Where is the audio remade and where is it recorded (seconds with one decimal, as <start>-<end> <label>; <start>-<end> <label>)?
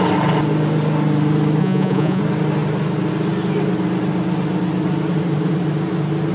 0.0-1.6 recorded; 1.6-2.2 remade; 2.2-6.3 recorded